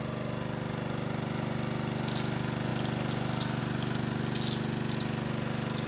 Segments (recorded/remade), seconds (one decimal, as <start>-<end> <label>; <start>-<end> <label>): 0.0-5.9 recorded